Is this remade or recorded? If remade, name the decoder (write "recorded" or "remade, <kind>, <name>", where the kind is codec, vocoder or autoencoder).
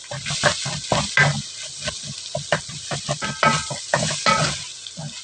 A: recorded